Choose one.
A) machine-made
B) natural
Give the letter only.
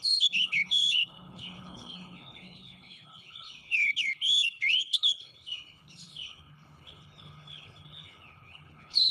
A